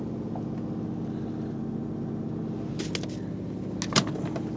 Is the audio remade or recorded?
recorded